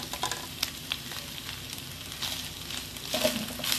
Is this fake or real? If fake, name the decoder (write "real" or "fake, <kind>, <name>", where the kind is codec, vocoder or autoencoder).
real